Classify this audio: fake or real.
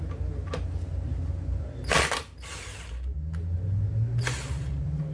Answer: real